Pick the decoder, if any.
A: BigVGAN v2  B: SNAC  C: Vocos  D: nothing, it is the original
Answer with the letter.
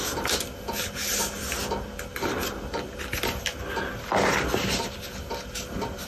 D